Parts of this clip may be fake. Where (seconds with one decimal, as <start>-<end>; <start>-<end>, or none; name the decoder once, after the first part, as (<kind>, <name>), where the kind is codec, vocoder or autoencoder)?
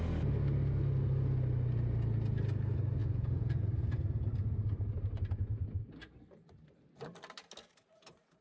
3.0-3.6 (vocoder, Vocos)